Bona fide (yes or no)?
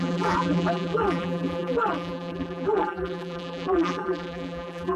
no